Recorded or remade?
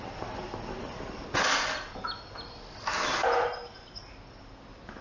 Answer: recorded